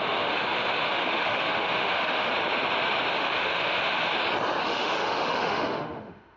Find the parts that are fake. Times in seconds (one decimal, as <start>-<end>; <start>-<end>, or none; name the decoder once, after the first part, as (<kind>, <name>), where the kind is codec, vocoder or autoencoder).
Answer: 0.0-2.3 (autoencoder, DAC-VAE); 3.1-4.1; 4.6-6.4